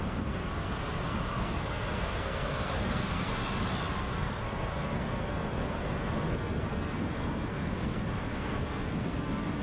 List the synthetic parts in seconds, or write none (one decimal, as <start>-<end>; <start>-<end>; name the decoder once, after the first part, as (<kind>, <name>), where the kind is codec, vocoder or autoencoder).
0.0-3.4 (codec, SNAC); 4.0-9.6